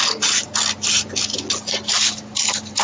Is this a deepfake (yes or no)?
no